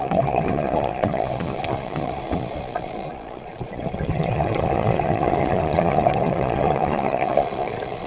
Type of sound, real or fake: fake